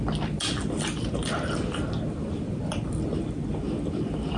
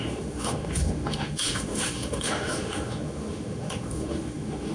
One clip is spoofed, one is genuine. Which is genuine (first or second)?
first